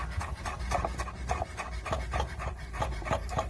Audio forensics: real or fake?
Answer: real